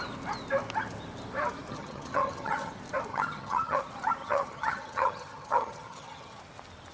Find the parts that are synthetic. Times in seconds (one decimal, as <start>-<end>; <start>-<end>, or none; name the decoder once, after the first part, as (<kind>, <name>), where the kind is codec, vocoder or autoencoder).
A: 1.7-2.7 (vocoder, HiFi-GAN); 3.1-3.8; 4.2-6.4

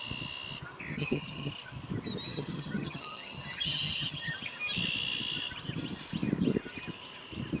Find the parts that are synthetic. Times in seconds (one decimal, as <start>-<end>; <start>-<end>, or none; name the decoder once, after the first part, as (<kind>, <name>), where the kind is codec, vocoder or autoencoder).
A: 0.9-1.5 (vocoder, HiFi-GAN); 2.3-4.3